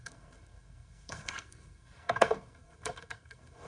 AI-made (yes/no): yes